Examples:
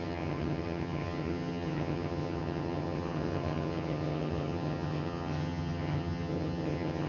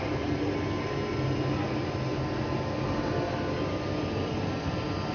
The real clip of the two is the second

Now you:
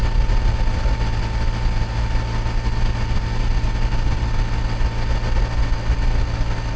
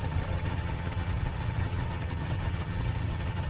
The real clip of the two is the first